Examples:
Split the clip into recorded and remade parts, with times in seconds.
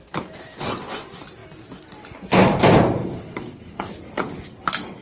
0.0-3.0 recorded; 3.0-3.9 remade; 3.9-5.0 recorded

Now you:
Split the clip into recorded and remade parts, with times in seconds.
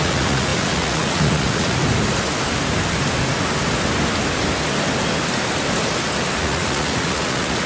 0.0-1.8 remade; 1.8-6.4 recorded; 6.4-7.7 remade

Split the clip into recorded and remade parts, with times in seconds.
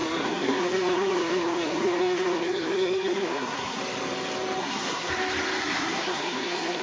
0.0-3.8 remade; 3.8-4.6 recorded; 4.6-5.1 remade; 5.1-5.6 recorded; 5.6-6.8 remade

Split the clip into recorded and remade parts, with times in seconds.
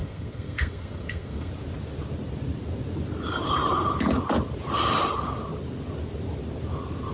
0.0-1.5 remade; 1.5-7.1 recorded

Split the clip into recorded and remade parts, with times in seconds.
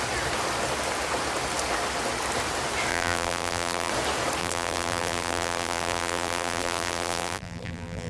0.0-2.9 recorded; 2.9-3.9 remade; 3.9-4.4 recorded; 4.4-8.1 remade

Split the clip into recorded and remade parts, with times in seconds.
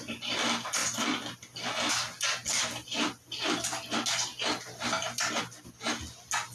0.0-6.5 recorded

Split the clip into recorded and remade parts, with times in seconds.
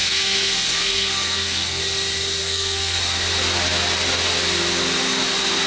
0.0-1.8 remade; 1.8-2.4 recorded; 2.4-3.0 remade; 3.0-5.7 recorded